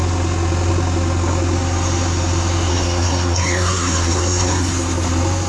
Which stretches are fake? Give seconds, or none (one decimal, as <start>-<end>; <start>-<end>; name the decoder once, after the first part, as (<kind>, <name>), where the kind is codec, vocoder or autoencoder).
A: 2.7-4.7 (codec, SNAC)